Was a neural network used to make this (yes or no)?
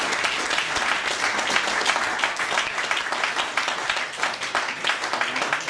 no